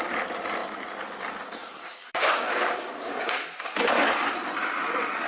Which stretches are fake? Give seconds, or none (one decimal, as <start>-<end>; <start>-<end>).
1.6-3.8